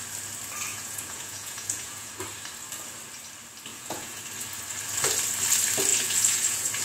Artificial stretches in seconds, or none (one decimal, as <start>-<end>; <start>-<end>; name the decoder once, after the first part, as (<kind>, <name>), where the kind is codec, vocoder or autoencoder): 0.7-2.1 (vocoder, Vocos); 3.7-4.2; 5.9-6.8